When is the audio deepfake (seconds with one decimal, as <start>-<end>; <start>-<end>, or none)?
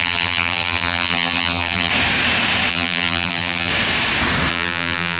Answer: 0.0-1.9; 2.7-3.7; 4.5-5.2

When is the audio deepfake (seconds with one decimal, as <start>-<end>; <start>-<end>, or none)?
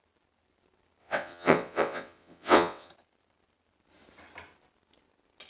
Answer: 1.0-2.9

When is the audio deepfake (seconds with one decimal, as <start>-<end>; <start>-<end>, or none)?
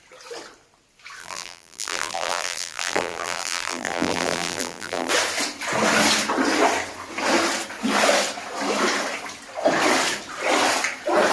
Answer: 1.2-5.1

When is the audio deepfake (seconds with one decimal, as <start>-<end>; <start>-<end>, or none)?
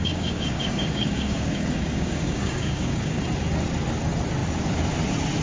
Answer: 0.0-3.2